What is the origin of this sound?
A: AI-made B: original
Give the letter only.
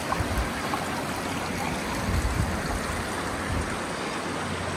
B